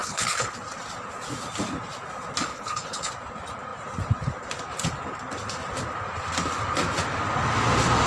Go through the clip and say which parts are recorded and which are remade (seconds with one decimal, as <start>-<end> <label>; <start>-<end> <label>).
0.0-0.6 remade; 0.6-2.5 recorded; 2.5-3.1 remade; 3.1-8.1 recorded